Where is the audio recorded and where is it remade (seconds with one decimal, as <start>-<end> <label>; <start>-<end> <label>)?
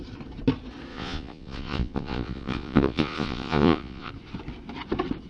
0.0-0.9 recorded; 0.9-4.1 remade; 4.1-5.3 recorded